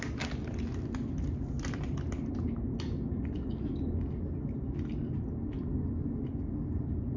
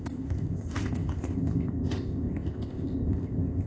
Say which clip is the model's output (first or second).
second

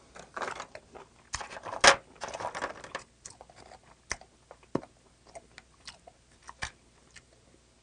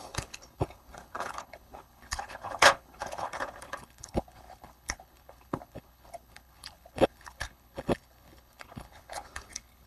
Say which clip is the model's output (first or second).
second